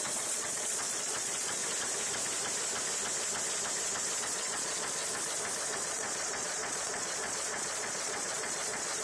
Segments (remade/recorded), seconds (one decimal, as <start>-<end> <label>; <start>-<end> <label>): 0.0-1.6 remade; 1.6-4.2 recorded; 4.2-5.0 remade; 5.0-5.7 recorded; 5.7-9.0 remade